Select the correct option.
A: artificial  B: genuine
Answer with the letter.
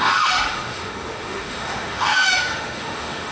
A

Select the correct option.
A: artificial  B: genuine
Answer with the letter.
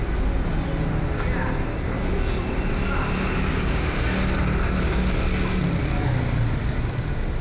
B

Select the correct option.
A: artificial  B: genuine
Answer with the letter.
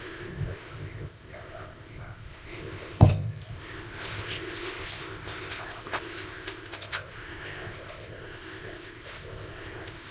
A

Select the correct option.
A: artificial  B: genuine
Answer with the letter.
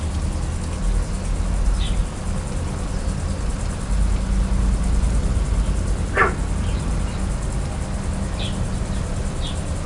B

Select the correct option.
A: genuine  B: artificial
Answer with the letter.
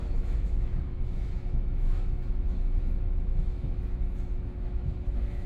B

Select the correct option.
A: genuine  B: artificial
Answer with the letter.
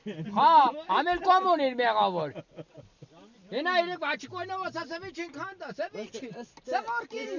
A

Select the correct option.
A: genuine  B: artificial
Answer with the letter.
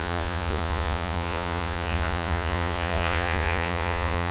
B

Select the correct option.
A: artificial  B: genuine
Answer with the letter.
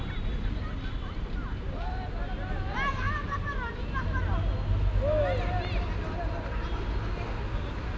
B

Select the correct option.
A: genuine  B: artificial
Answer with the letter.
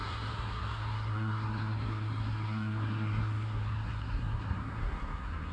B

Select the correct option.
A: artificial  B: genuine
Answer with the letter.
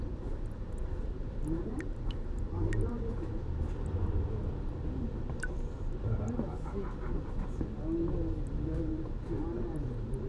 B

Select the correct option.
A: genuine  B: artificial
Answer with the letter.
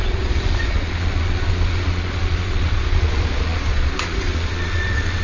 B